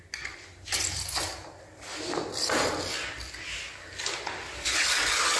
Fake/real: real